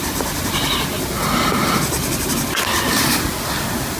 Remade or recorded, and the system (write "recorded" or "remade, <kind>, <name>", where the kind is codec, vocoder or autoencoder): recorded